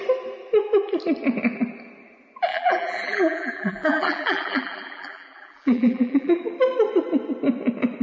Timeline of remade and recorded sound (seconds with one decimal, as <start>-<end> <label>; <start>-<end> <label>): 0.0-2.5 recorded; 2.5-6.4 remade; 6.4-8.0 recorded